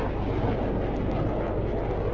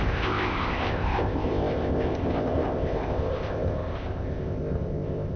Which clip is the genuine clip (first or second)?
first